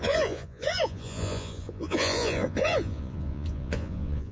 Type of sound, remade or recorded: remade